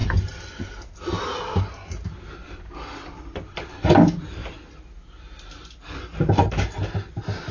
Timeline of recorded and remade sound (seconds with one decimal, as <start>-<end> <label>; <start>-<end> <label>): 0.0-7.5 recorded